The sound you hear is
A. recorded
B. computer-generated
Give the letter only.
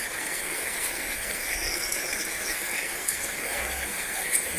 B